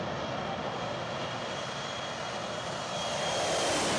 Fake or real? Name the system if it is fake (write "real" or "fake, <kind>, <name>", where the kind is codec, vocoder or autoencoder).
real